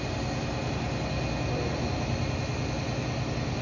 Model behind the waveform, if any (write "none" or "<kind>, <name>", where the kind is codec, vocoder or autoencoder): none